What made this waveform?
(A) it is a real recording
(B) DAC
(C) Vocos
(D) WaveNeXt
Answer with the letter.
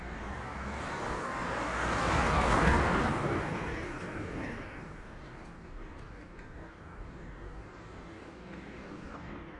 B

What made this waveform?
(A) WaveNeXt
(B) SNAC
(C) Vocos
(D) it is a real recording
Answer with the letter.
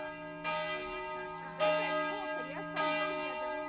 D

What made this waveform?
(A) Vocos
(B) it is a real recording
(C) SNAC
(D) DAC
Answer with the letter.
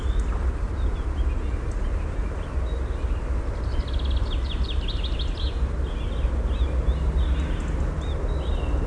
B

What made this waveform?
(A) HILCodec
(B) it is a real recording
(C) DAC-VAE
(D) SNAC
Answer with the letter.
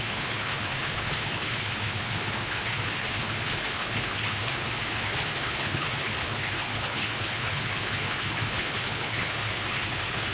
A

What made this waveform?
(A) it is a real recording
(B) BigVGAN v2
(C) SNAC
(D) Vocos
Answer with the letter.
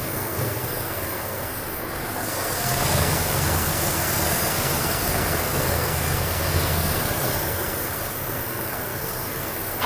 C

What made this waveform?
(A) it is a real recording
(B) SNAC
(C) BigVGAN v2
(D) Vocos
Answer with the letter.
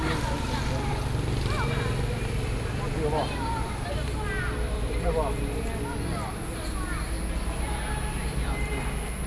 A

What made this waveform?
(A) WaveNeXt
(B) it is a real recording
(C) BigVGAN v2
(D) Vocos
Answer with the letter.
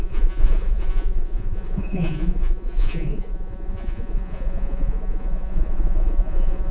D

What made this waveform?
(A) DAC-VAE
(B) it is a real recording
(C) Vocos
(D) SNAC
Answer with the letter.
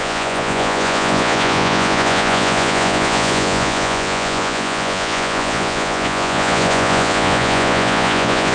C